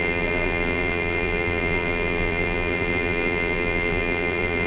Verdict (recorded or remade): remade